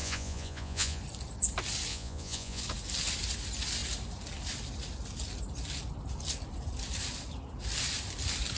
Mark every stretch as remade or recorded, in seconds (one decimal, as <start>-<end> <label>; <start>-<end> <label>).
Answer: 0.0-1.0 remade; 1.0-1.9 recorded; 1.9-2.6 remade; 2.6-8.6 recorded